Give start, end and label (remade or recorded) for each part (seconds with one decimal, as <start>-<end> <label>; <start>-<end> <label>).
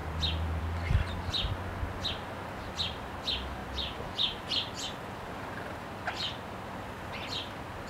0.0-0.6 recorded; 0.6-1.1 remade; 1.1-2.1 recorded; 2.1-7.9 remade